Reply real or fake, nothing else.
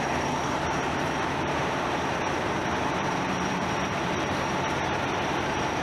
fake